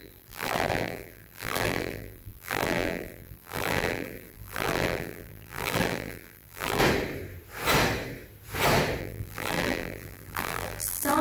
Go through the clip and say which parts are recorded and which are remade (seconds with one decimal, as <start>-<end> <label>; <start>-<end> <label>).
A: 0.0-6.8 remade; 6.8-9.0 recorded; 9.0-11.2 remade